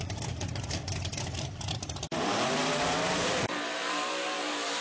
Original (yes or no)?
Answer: no